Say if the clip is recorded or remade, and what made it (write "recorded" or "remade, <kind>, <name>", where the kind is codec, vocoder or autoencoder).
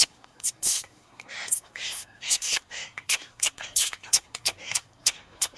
remade, codec, SNAC